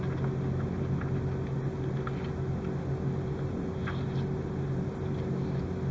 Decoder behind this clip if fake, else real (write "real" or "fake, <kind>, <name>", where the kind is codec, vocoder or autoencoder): real